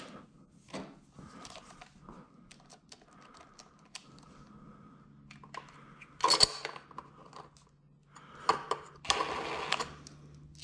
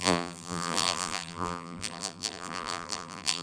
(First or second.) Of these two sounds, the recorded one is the first